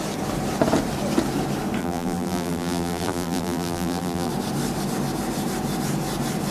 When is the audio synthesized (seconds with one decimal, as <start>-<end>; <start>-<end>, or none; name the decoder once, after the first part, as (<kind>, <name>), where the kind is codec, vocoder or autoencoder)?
1.8-4.3 (vocoder, BigVGAN v2)